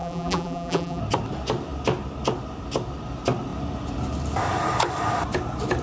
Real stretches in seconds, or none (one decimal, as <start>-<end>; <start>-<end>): 1.0-5.8